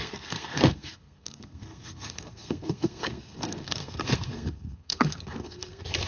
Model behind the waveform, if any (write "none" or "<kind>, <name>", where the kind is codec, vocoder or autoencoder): codec, SNAC